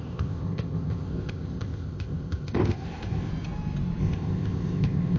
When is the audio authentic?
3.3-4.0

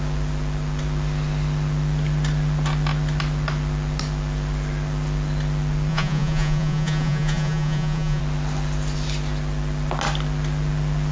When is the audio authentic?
0.0-5.9; 8.2-11.1

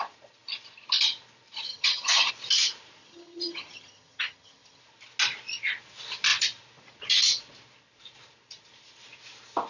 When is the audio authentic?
0.0-1.7; 2.3-3.0; 4.8-9.7